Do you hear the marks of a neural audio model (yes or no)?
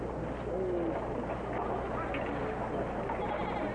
no